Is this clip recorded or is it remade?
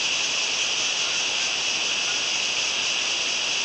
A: recorded